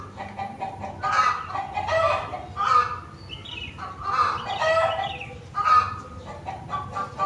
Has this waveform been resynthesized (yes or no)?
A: no